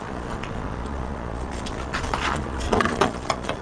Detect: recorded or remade remade